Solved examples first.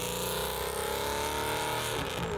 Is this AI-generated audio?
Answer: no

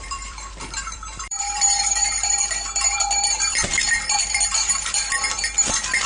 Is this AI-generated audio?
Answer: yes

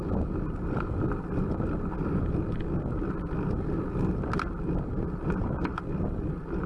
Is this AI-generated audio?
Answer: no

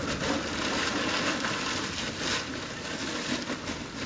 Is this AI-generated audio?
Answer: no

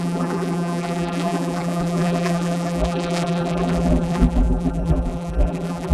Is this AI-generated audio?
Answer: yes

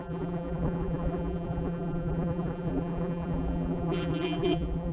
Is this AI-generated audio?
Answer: yes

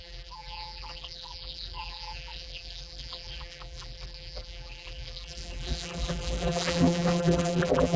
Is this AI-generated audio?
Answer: yes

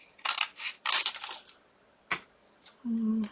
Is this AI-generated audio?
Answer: no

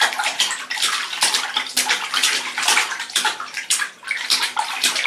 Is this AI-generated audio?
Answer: yes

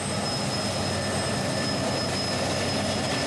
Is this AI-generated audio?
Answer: no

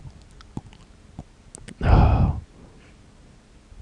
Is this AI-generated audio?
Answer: no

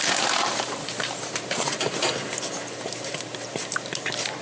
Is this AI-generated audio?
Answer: yes